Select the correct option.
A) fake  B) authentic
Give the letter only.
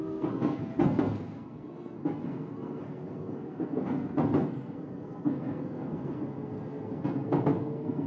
A